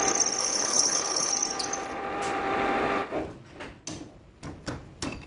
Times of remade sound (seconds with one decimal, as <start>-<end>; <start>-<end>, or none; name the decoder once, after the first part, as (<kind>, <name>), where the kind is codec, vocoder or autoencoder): 0.4-1.3 (codec, HILCodec)